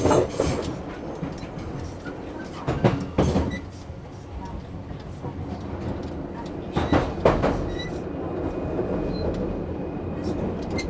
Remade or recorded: recorded